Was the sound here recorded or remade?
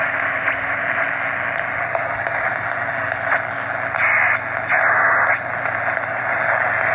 recorded